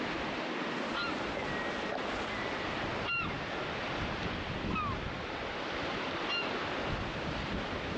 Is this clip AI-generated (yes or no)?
no